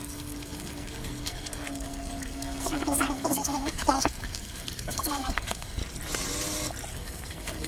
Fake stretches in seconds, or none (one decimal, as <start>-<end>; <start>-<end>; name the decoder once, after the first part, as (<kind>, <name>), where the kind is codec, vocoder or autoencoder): 0.0-5.8 (codec, SNAC); 6.9-7.7